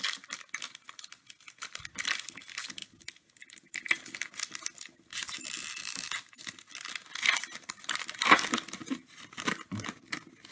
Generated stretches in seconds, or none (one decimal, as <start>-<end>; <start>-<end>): none